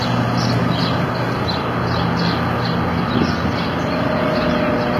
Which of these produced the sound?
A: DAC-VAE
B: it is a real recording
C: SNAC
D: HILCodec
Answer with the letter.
B